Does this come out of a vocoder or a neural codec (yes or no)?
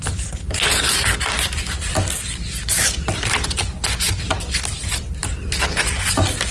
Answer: no